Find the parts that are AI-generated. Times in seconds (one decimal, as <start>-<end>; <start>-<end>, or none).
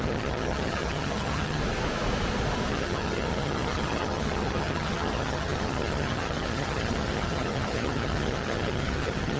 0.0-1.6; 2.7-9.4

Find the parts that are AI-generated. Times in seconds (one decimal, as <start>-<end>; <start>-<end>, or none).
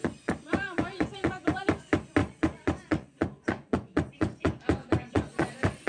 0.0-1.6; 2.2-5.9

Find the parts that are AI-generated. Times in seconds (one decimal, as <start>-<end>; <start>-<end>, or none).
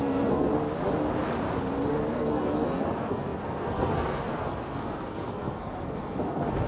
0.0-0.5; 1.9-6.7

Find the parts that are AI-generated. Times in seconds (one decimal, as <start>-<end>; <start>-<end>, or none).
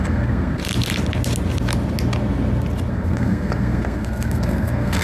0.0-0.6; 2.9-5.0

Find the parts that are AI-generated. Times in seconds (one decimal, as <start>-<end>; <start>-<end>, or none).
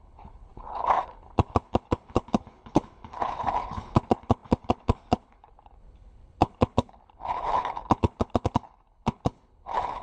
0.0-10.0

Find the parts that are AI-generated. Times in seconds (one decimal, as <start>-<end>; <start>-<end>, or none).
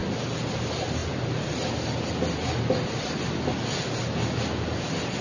none